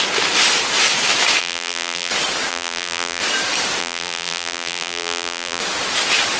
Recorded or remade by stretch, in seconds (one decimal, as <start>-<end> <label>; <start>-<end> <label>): 0.0-1.4 recorded; 1.4-2.1 remade; 2.1-2.5 recorded; 2.5-3.2 remade; 3.2-3.8 recorded; 3.8-5.6 remade; 5.6-6.4 recorded